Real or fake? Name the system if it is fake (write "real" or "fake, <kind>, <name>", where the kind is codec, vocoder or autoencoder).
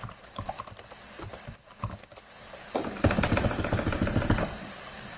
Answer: real